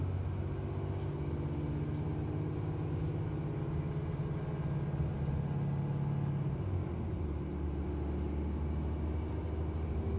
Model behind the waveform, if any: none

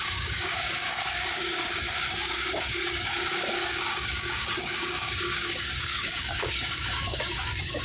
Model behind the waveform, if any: codec, DAC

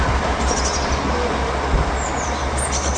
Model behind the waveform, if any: none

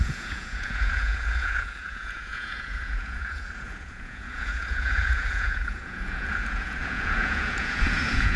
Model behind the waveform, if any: vocoder, Vocos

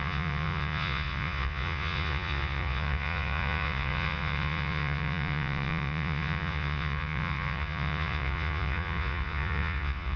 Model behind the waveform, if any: vocoder, Vocos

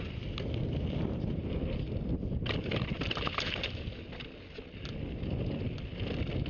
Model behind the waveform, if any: none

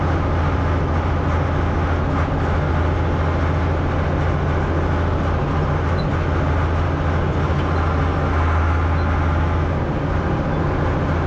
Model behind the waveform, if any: none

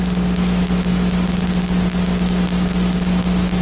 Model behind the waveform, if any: none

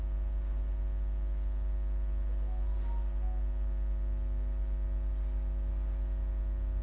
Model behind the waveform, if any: none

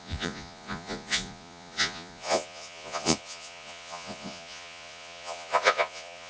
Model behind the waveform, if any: vocoder, Vocos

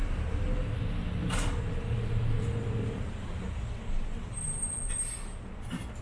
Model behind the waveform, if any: none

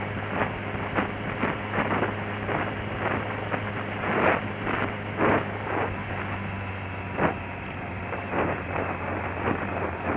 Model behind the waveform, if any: none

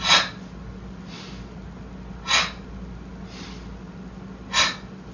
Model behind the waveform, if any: none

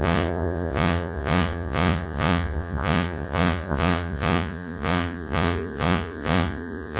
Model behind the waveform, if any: vocoder, Vocos